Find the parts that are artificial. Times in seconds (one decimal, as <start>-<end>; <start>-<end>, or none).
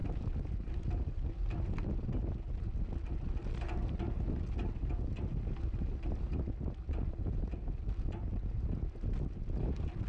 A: none